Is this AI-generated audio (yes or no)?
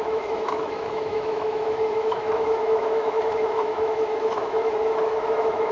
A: yes